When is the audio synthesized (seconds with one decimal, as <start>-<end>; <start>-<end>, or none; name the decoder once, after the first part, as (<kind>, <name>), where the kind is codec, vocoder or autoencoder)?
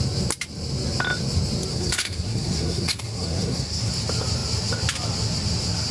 1.7-3.9 (codec, SNAC)